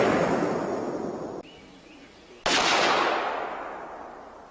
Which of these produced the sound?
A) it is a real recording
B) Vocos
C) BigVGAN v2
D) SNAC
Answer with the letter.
A